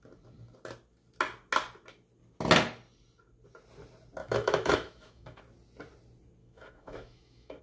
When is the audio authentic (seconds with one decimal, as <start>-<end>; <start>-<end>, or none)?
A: 0.0-4.2; 5.4-6.4